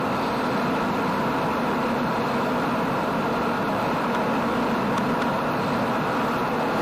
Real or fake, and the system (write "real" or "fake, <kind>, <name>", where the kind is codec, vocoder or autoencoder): real